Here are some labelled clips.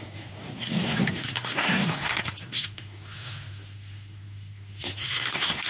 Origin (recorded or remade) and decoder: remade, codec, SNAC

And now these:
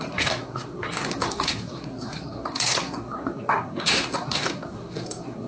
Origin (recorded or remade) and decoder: remade, codec, SNAC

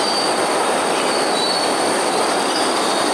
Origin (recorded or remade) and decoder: recorded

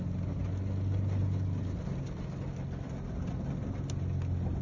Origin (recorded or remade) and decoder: recorded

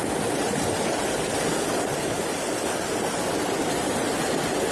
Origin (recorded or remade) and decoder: recorded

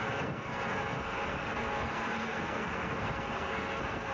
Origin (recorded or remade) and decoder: remade, codec, SNAC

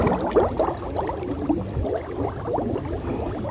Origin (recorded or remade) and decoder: recorded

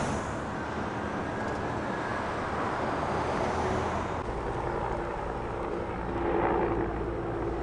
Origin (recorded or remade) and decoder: recorded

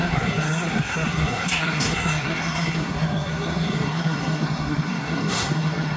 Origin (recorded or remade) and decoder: remade, codec, SNAC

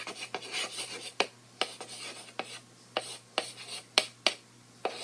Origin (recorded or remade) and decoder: recorded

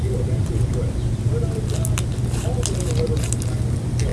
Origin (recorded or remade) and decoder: recorded